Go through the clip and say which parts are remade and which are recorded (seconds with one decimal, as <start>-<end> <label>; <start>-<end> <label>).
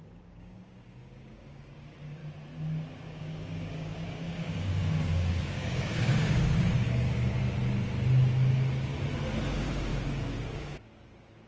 0.0-2.2 remade; 2.2-3.2 recorded; 3.2-7.4 remade; 7.4-9.5 recorded; 9.5-11.5 remade